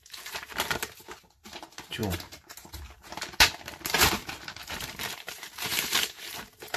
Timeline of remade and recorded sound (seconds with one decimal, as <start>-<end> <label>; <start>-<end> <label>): 0.0-6.8 remade